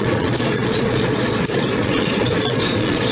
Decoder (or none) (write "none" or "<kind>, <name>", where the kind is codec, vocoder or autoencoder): vocoder, Vocos